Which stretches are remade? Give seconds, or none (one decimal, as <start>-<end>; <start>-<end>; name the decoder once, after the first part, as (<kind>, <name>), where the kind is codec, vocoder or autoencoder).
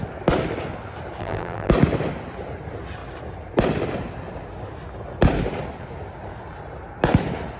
1.2-1.7 (vocoder, BigVGAN v2)